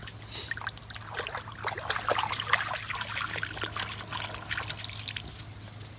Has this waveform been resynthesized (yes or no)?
no